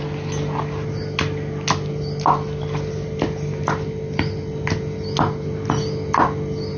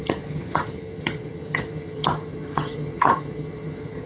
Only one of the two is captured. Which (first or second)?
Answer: first